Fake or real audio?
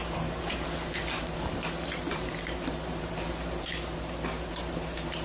fake